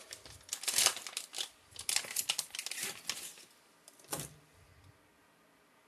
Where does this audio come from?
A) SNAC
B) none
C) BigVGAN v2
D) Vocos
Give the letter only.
B